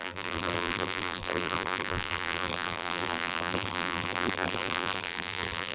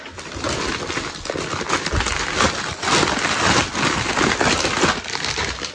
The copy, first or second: first